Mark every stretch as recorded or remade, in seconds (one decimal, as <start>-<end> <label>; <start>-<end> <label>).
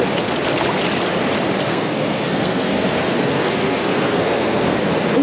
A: 0.0-1.7 recorded; 1.7-4.8 remade; 4.8-5.2 recorded